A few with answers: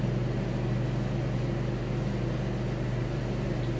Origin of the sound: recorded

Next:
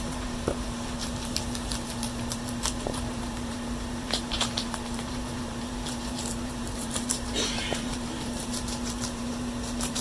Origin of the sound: remade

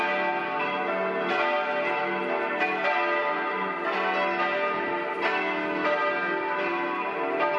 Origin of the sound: recorded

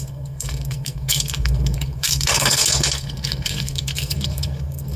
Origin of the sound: remade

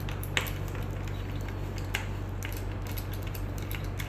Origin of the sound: recorded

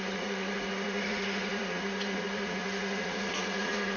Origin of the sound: remade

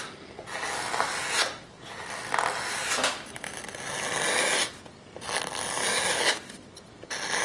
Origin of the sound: recorded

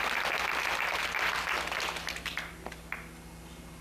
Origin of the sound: recorded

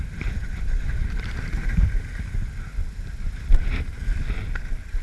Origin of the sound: recorded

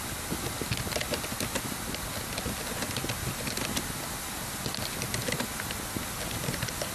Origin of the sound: recorded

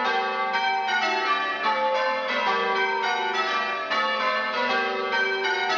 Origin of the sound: recorded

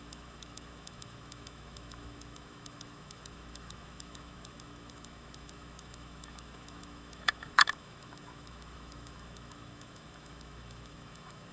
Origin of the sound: remade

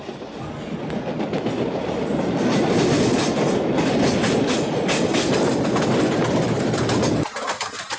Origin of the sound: recorded